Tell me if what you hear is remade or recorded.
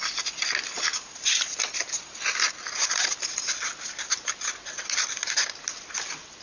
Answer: recorded